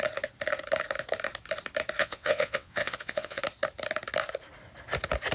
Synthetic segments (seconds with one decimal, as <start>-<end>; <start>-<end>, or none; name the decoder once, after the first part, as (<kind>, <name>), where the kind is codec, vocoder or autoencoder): 2.0-3.4 (vocoder, WaveNeXt)